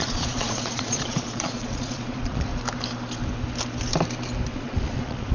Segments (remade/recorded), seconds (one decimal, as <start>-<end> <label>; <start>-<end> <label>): 0.0-2.5 remade; 2.5-4.5 recorded; 4.5-5.3 remade